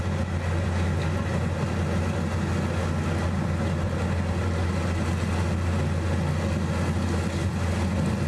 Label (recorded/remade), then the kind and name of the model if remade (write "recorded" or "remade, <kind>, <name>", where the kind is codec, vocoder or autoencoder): recorded